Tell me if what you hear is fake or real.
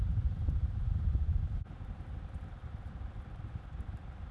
fake